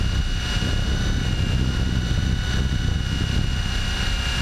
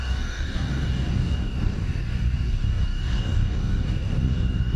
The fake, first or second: second